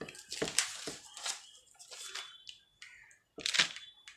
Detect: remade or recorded recorded